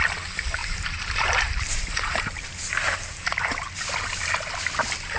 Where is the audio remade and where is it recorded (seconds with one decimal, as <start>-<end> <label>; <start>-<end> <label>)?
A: 0.0-0.6 recorded; 0.6-3.7 remade; 3.7-5.2 recorded